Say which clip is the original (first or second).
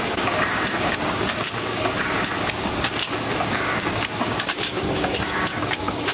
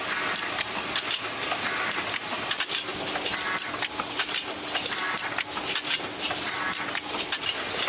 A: second